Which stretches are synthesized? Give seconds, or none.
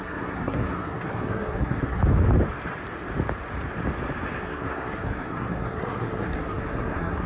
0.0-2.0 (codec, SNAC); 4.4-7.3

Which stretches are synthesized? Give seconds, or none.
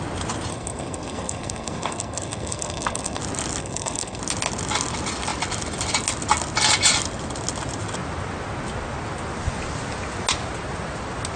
0.5-3.2 (codec, SNAC); 3.6-4.2